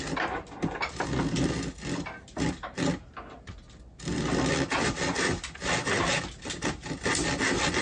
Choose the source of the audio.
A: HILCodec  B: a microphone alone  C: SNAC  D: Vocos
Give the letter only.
B